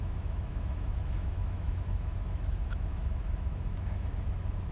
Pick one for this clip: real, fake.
fake